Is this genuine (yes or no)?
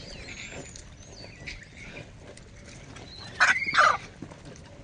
yes